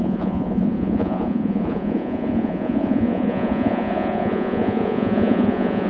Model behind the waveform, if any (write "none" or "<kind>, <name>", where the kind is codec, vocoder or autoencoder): vocoder, Vocos